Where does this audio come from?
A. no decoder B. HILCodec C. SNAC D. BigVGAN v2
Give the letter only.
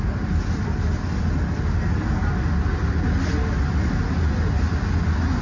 A